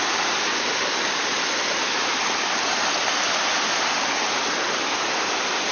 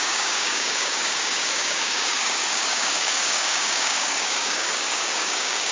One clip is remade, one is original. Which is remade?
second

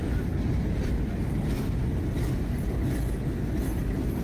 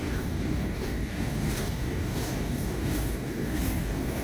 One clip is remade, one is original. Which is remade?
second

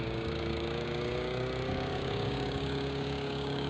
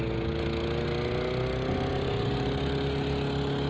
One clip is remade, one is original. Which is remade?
first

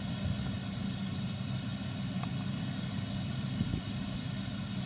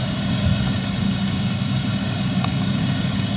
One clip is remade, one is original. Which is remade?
second